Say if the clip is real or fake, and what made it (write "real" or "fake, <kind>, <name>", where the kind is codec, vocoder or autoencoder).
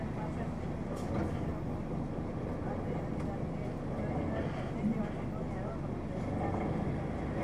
real